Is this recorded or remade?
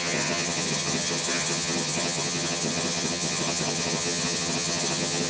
remade